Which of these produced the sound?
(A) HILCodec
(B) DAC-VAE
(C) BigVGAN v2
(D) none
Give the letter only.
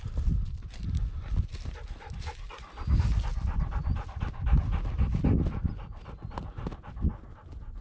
D